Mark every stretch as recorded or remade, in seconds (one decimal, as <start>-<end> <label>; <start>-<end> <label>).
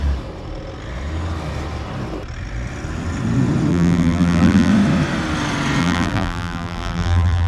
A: 0.0-3.7 recorded; 3.7-4.7 remade; 4.7-5.8 recorded; 5.8-7.5 remade